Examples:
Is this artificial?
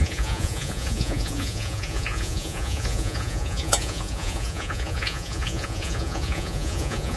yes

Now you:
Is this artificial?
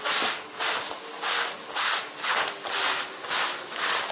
no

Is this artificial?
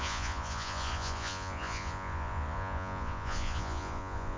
yes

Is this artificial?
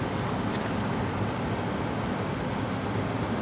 no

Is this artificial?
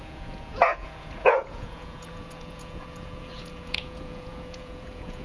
yes